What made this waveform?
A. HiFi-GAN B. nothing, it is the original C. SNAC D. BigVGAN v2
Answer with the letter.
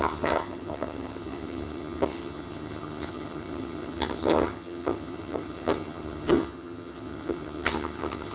A